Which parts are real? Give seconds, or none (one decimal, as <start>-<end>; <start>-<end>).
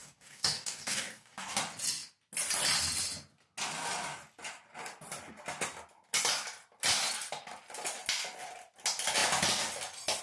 1.6-10.2